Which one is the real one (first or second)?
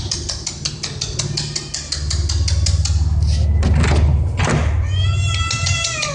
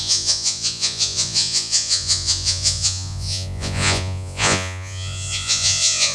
first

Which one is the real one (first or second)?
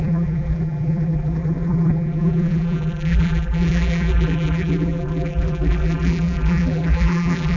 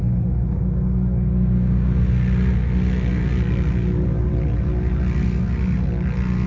second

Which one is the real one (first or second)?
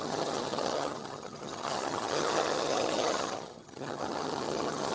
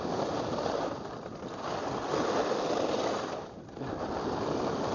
second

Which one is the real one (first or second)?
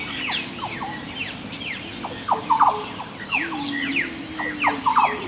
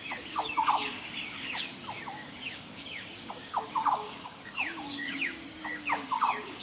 first